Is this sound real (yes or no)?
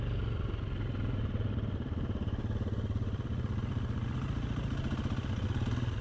no